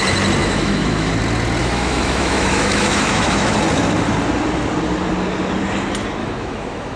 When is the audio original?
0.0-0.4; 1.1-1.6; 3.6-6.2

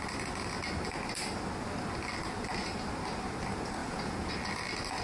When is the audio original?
0.0-3.8; 4.3-5.0

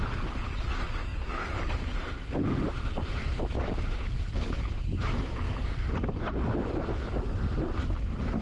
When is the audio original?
0.0-8.4

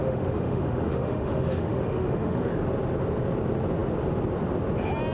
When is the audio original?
2.5-5.1

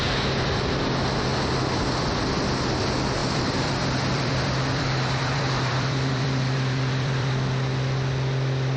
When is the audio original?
0.0-3.2; 7.3-8.8